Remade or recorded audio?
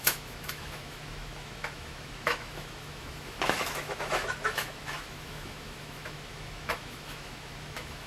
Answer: remade